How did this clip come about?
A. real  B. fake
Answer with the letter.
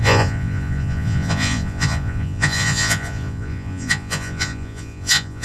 B